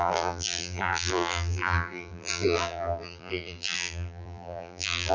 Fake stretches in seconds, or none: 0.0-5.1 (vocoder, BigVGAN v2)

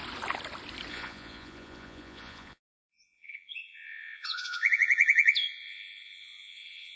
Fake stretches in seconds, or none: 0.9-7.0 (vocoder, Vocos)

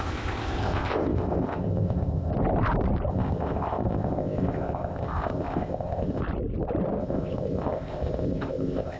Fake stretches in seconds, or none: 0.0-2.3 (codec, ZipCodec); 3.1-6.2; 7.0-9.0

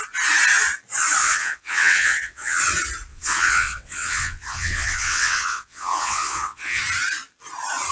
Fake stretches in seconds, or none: 1.2-2.6 (vocoder, WaveNeXt); 3.1-6.8

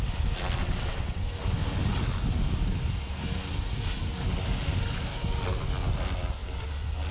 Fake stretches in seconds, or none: 0.6-1.2 (vocoder, WaveNeXt)